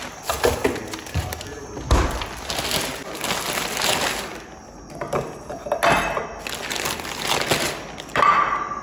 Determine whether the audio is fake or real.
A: real